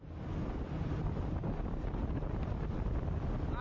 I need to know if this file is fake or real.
real